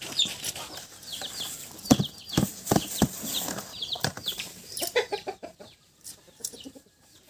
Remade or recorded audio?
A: remade